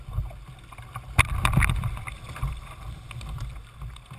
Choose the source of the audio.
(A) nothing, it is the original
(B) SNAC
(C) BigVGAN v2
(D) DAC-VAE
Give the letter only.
A